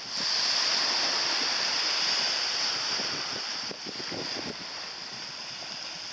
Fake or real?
real